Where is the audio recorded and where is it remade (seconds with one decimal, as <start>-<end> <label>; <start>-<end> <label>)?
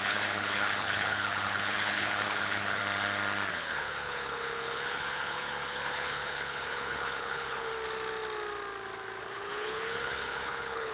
0.0-2.8 remade; 2.8-3.5 recorded; 3.5-7.7 remade; 7.7-9.2 recorded; 9.2-10.9 remade